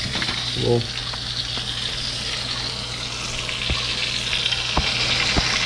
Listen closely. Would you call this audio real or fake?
real